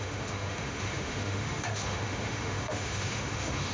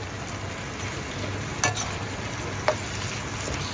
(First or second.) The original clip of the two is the second